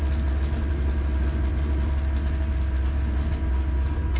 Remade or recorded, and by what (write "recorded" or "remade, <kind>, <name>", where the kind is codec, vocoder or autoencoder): recorded